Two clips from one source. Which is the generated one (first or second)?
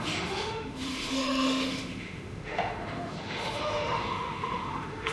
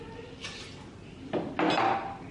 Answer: first